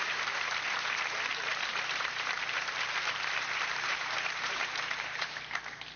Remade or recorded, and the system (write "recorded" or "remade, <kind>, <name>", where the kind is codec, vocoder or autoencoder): remade, vocoder, BigVGAN v2